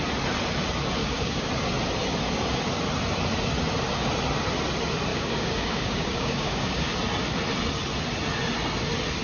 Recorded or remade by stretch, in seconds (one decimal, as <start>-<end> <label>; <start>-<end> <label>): 0.0-1.0 recorded; 1.0-1.5 remade; 1.5-5.1 recorded; 5.1-6.9 remade; 6.9-9.2 recorded